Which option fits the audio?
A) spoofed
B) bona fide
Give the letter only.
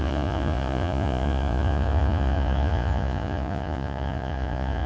A